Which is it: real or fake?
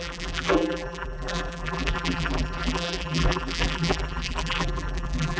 fake